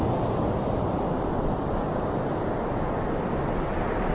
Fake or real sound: real